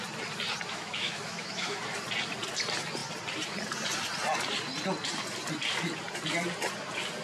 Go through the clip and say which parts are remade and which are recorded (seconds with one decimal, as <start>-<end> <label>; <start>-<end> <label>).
0.0-0.7 recorded; 0.7-1.8 remade; 1.8-7.2 recorded